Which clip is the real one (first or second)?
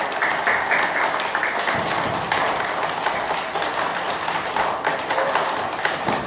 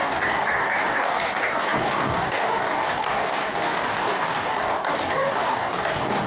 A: first